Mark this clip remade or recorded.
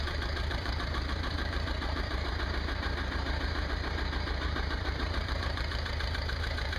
remade